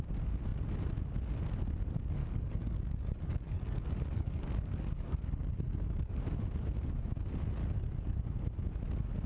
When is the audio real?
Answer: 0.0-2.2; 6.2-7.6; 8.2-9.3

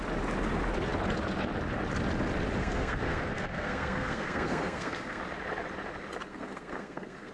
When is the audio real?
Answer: 0.0-2.6; 5.2-6.3

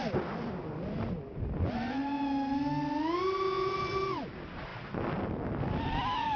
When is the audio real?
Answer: 0.6-1.6; 2.0-3.7; 4.7-5.6

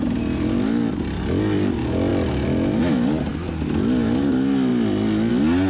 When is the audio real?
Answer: 0.0-5.7

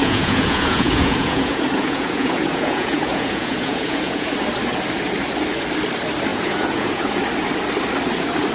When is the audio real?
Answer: 4.3-6.3; 7.2-8.5

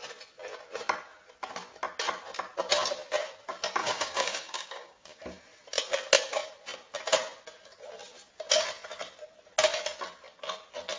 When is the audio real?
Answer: 0.0-3.8; 5.2-11.0